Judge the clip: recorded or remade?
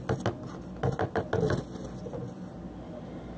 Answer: recorded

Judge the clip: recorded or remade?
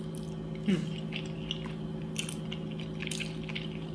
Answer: recorded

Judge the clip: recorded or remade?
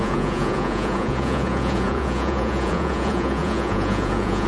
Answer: remade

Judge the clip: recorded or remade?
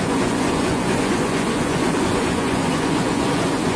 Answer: remade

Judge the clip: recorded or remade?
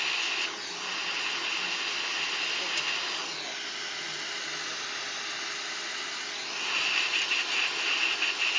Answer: recorded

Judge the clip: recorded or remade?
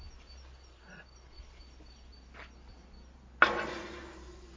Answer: recorded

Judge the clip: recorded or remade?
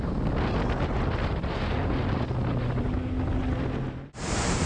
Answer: recorded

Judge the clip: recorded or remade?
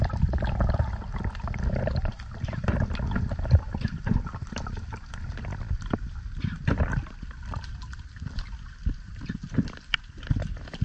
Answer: recorded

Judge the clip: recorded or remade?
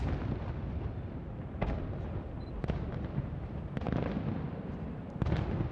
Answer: recorded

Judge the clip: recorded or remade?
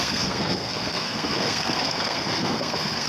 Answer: remade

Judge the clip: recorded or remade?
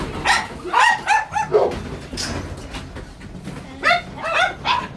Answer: recorded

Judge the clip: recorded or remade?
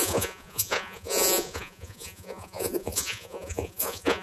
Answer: remade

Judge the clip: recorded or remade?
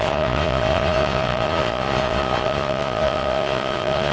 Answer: remade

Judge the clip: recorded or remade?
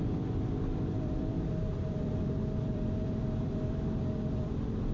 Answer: remade